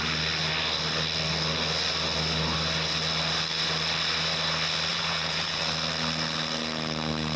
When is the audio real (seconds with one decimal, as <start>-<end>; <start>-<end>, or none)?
0.0-4.9; 5.6-7.4

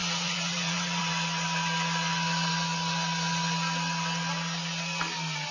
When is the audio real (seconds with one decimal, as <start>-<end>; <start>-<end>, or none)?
1.0-5.5

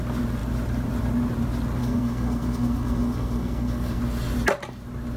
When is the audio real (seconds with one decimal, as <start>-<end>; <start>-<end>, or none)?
0.0-1.8; 4.0-5.2

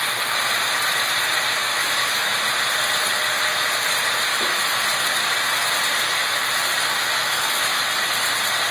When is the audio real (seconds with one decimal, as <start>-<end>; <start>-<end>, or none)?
0.0-1.6; 2.4-4.3; 4.8-7.2; 7.8-8.7

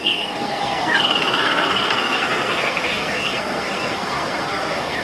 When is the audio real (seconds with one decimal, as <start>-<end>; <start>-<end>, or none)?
none

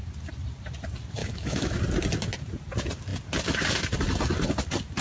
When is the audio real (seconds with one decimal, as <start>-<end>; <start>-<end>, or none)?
0.0-1.2; 1.8-5.0